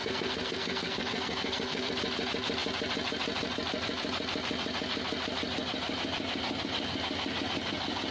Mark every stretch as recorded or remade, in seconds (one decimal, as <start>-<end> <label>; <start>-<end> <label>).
0.0-1.9 remade; 1.9-8.1 recorded